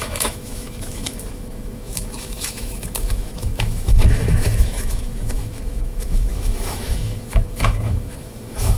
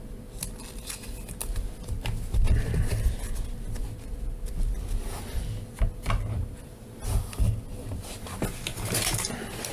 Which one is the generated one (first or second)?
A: first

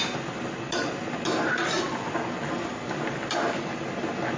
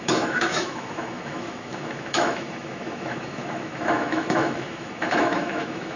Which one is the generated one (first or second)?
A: second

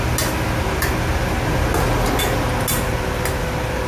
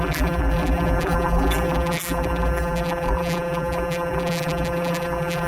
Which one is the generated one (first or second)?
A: second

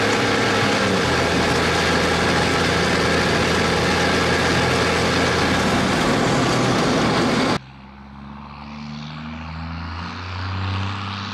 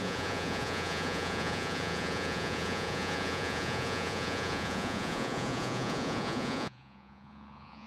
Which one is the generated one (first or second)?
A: second